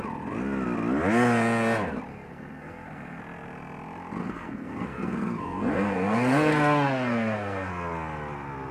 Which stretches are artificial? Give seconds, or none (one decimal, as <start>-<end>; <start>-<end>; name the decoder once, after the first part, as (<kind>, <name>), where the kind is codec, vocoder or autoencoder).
2.1-3.2 (codec, SNAC); 4.2-7.7